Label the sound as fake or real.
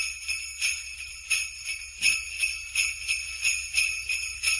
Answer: real